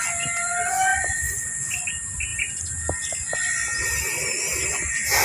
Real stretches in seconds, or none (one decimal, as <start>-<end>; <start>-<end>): 0.0-0.9; 1.9-5.2